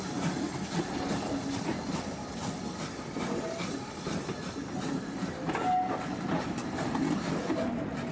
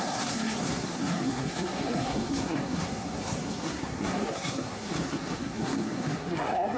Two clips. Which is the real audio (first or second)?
first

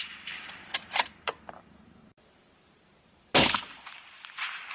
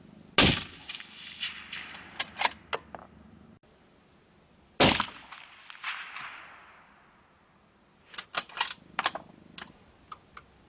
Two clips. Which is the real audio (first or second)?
second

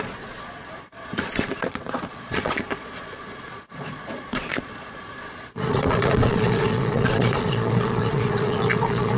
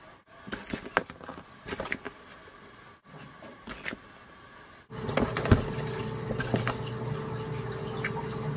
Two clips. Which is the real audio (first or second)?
second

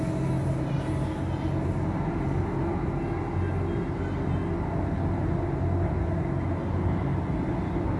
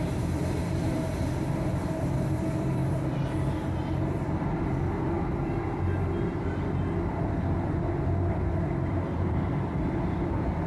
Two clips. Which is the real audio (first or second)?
first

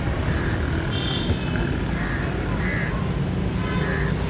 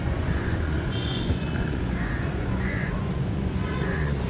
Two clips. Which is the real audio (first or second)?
first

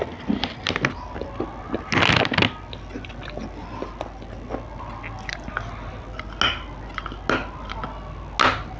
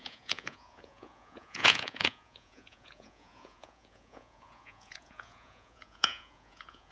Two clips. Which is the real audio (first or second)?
first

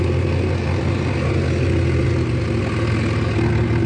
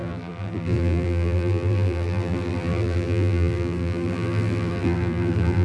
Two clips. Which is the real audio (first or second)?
first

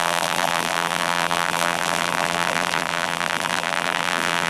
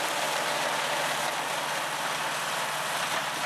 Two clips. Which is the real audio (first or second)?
second